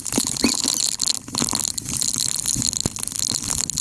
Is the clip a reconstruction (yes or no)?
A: no